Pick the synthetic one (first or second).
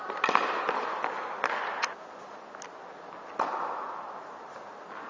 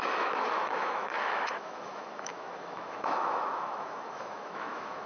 second